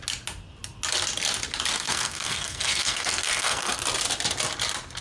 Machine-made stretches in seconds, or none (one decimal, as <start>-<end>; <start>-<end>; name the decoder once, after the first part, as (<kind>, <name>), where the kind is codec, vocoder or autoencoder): 1.7-3.8 (codec, SNAC)